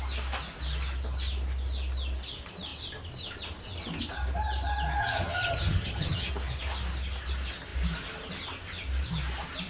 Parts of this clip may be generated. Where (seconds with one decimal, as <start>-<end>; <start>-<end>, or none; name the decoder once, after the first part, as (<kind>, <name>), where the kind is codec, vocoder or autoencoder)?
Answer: 5.0-6.3 (vocoder, HiFi-GAN)